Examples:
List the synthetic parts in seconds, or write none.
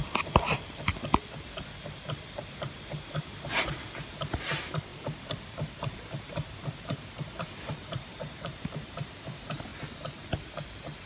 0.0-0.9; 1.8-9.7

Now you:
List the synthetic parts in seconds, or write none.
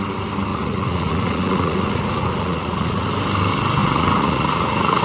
0.5-3.1; 3.8-5.0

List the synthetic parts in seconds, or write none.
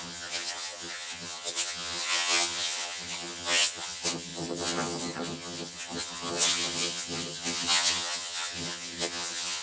0.0-9.6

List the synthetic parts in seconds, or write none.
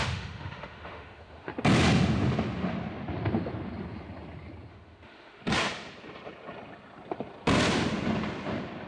0.0-1.5; 4.7-5.4